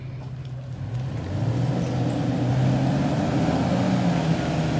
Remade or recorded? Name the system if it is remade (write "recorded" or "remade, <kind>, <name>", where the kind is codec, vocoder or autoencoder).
recorded